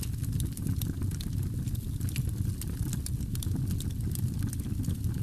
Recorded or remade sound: recorded